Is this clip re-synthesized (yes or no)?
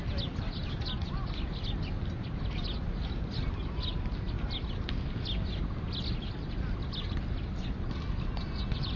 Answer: no